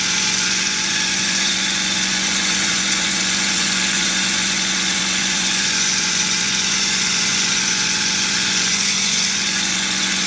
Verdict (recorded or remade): remade